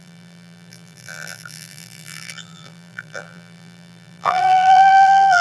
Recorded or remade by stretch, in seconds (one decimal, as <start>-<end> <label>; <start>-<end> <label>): 0.0-5.4 remade